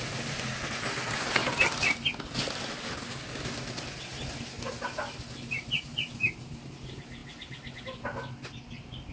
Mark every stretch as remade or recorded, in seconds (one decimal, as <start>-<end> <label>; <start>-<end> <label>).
0.0-9.1 recorded